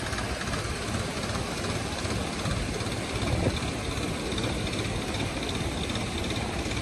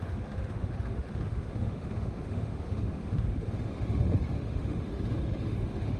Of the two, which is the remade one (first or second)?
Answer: second